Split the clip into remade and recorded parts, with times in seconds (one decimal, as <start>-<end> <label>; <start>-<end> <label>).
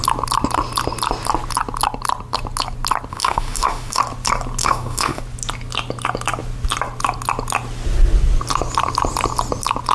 0.0-3.1 recorded; 3.1-4.0 remade; 4.0-4.6 recorded; 4.6-5.2 remade; 5.2-9.9 recorded